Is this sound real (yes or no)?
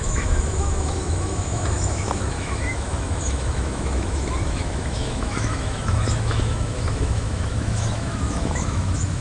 no